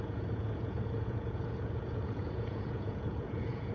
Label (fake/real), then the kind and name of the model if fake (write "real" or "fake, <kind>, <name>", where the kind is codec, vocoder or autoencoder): fake, vocoder, Vocos